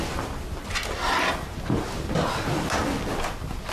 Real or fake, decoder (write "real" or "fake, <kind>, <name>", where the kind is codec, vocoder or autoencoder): real